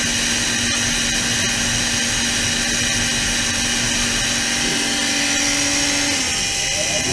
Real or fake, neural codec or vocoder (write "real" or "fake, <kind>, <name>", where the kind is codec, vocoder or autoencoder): real